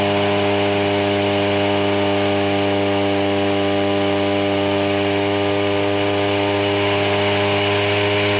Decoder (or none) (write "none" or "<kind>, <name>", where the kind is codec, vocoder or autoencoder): none